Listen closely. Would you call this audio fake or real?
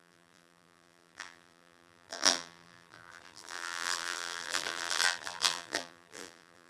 fake